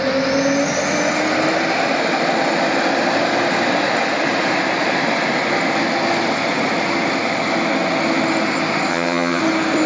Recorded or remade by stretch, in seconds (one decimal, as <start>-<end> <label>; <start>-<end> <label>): 0.0-8.9 recorded; 8.9-9.4 remade; 9.4-9.9 recorded